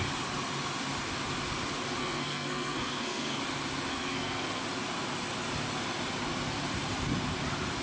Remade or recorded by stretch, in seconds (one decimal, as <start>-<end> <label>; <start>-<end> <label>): 0.0-2.0 recorded; 2.0-3.4 remade; 3.4-3.9 recorded; 3.9-4.6 remade; 4.6-7.8 recorded